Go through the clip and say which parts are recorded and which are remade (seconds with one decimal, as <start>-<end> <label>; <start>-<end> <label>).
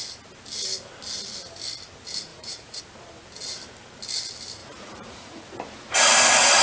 0.0-2.3 recorded; 2.3-2.8 remade; 2.8-4.6 recorded; 4.6-5.4 remade; 5.4-6.6 recorded